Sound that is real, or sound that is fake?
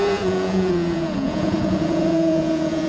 fake